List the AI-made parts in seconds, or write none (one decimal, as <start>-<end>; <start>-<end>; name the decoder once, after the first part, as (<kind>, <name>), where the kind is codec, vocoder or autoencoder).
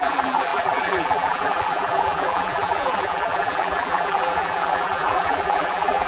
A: 0.0-6.1 (vocoder, BigVGAN v2)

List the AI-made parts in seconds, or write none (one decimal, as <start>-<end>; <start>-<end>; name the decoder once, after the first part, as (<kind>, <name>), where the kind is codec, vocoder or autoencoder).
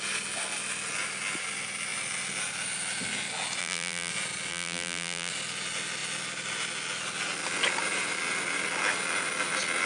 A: 3.6-4.1 (vocoder, BigVGAN v2); 4.5-5.3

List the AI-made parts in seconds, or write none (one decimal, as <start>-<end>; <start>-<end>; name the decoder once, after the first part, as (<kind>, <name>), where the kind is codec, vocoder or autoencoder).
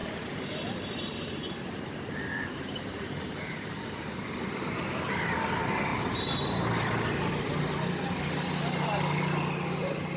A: 0.0-4.3 (vocoder, BigVGAN v2)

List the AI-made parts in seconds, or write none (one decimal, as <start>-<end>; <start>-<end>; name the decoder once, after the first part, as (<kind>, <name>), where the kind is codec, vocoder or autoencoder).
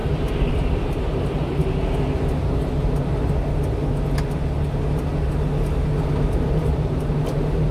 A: 0.0-1.6 (vocoder, BigVGAN v2); 6.0-7.7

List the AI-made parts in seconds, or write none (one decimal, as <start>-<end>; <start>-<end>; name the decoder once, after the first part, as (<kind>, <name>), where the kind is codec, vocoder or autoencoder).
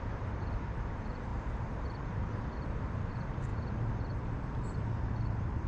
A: 0.0-5.7 (vocoder, BigVGAN v2)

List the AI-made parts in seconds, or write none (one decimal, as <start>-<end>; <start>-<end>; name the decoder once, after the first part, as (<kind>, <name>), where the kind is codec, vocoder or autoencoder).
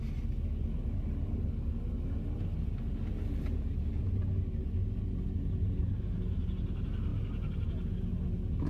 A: 5.8-6.4 (vocoder, BigVGAN v2)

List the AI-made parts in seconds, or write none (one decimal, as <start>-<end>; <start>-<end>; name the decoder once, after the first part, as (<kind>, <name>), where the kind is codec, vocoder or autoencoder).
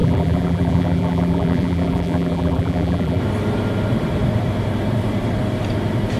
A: 0.0-3.2 (vocoder, BigVGAN v2)